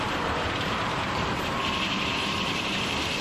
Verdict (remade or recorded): remade